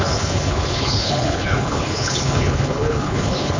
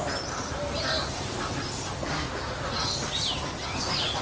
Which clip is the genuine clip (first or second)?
second